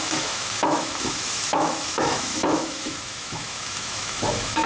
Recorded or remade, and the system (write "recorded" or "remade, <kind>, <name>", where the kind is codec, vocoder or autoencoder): remade, autoencoder, DAC-VAE